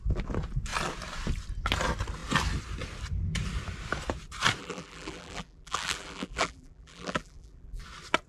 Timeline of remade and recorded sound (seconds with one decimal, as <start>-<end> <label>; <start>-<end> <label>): 0.0-4.6 recorded; 4.6-7.8 remade; 7.8-8.3 recorded